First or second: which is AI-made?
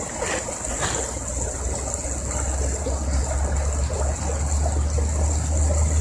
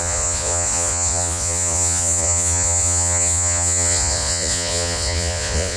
second